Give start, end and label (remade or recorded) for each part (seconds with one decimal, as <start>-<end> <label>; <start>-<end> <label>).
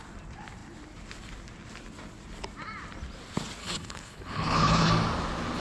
0.0-3.6 recorded; 3.6-4.9 remade; 4.9-5.6 recorded